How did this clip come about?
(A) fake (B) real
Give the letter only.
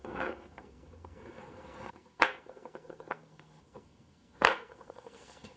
A